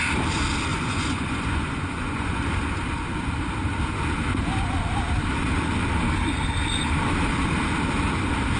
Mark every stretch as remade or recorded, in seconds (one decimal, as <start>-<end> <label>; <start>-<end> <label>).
0.0-0.7 recorded; 0.7-2.4 remade; 2.4-8.6 recorded

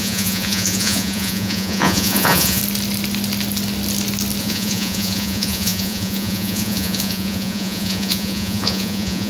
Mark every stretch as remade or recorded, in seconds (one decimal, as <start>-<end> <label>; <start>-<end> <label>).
0.0-2.6 remade; 2.6-4.4 recorded; 4.4-9.3 remade

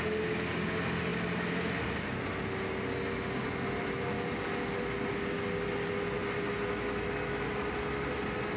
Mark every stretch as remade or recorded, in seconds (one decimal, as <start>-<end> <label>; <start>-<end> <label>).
0.0-8.6 recorded

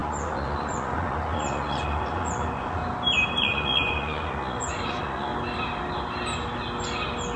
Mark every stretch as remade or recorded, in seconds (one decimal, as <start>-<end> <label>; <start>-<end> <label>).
0.0-2.8 remade; 2.8-3.4 recorded; 3.4-5.3 remade; 5.3-7.4 recorded

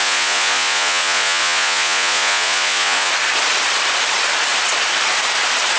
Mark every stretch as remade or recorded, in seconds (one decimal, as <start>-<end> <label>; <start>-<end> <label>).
0.0-3.1 remade; 3.1-5.8 recorded

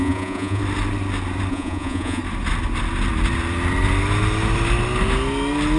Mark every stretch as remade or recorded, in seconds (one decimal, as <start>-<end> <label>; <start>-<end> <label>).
0.0-0.6 remade; 0.6-1.5 recorded; 1.5-2.2 remade; 2.2-5.8 recorded